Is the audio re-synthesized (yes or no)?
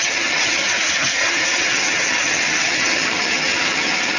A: yes